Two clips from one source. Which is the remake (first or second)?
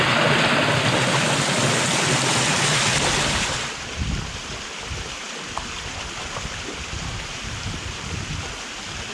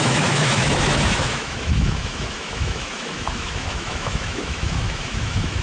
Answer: second